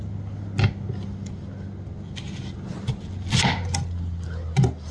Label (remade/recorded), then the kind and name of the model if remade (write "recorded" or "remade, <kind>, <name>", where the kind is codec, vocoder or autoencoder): recorded